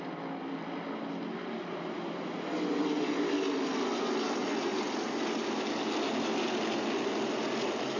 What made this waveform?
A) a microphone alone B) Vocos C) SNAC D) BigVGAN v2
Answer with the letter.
A